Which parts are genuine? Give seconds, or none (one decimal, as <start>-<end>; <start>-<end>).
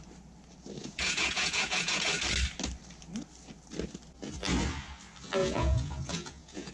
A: 0.0-0.8; 2.2-5.4